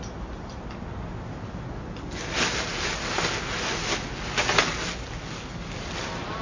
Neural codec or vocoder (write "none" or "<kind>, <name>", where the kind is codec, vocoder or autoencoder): none